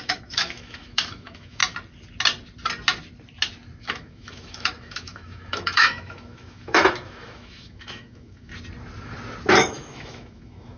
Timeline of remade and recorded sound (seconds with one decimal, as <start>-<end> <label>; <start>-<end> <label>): 0.0-1.6 remade; 1.6-3.8 recorded; 3.8-8.5 remade; 8.5-9.5 recorded; 9.5-10.8 remade